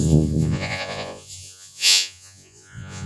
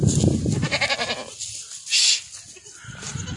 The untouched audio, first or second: second